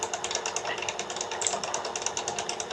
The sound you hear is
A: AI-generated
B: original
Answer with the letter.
B